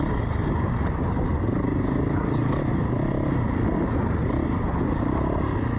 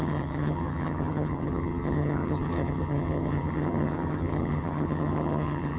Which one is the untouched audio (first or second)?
first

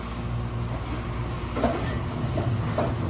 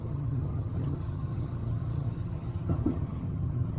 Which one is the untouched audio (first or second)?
first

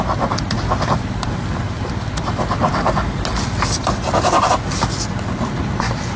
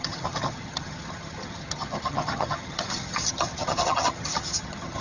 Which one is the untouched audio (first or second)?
first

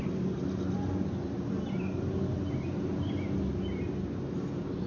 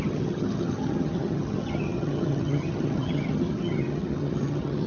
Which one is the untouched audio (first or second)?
first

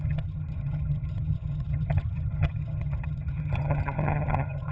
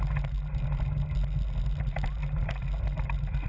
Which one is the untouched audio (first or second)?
second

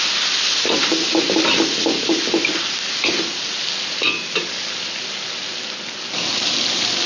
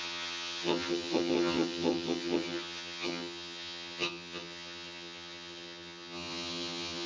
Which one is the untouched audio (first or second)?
first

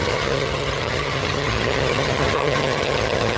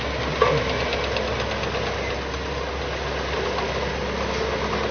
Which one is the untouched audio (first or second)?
second